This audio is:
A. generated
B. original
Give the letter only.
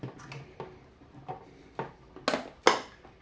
B